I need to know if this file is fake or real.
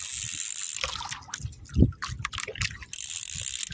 real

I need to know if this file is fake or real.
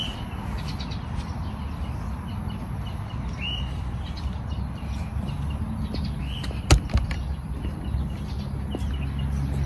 real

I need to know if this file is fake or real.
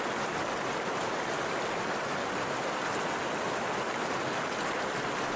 real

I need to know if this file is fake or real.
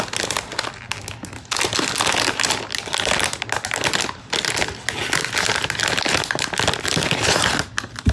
real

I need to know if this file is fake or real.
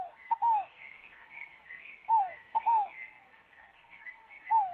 fake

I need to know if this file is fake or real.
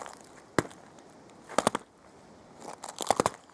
real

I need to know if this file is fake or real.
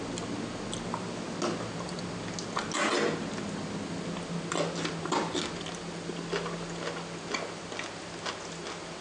real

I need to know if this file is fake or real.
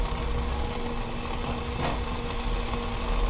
real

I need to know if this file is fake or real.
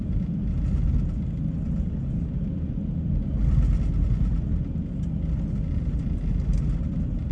real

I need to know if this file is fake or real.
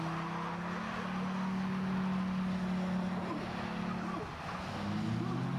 real